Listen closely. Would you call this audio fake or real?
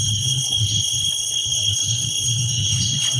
fake